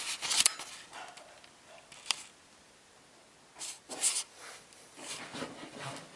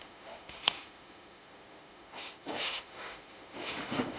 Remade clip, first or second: second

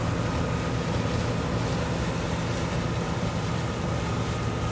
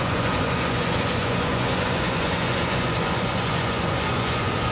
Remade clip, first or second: second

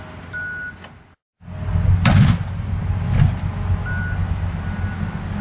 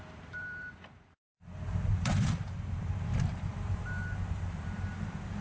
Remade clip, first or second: second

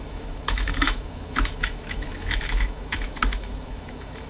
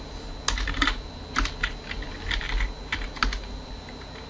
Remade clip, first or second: first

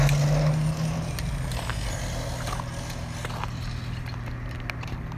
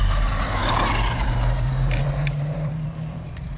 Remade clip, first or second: second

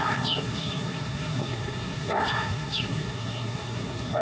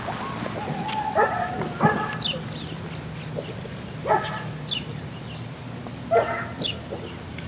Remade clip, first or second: first